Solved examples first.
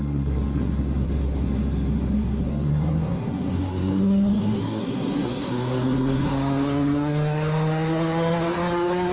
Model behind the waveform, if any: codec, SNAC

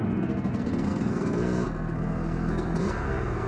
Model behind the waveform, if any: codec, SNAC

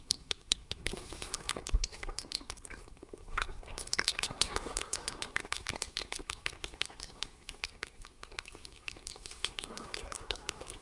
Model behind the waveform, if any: codec, SNAC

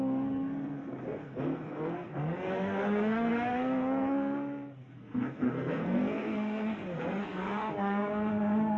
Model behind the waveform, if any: codec, SNAC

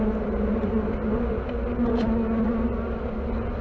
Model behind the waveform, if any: none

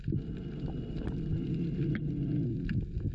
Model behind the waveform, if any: none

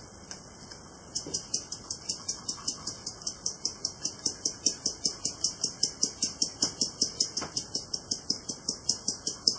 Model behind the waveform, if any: none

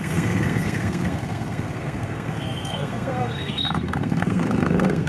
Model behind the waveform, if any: codec, SNAC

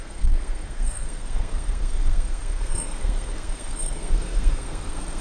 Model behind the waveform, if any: codec, SNAC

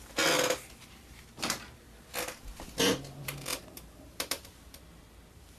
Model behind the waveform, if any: none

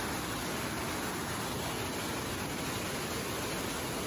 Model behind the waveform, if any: none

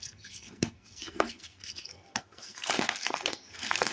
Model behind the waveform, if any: codec, SNAC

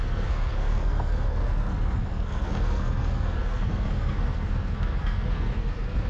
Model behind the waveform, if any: codec, SNAC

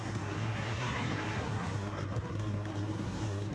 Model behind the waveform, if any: codec, SNAC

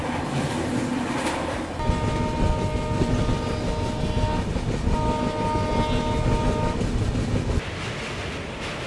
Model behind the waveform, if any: none